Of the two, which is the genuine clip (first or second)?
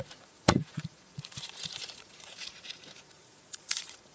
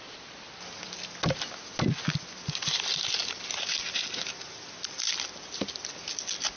second